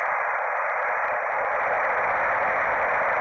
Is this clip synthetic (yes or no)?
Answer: yes